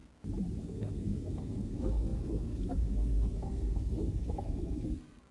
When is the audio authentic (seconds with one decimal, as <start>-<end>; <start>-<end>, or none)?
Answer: 0.0-0.6